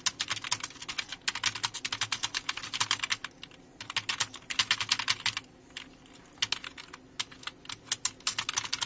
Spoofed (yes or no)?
no